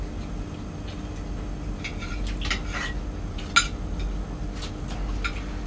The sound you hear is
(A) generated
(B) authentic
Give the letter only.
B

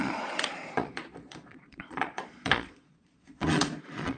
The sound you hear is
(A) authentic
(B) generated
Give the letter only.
B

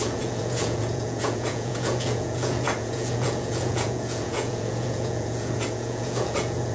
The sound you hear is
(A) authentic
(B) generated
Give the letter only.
B